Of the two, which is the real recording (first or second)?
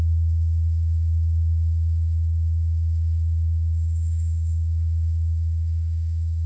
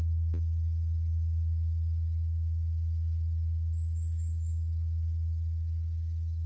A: second